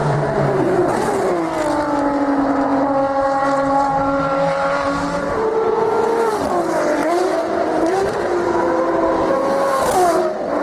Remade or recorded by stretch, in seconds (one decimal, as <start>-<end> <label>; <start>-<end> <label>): 0.0-1.3 remade; 1.3-10.6 recorded